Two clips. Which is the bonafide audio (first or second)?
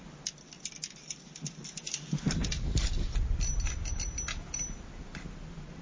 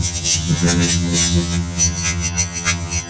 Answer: first